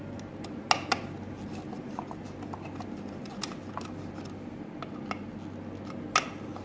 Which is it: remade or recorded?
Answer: recorded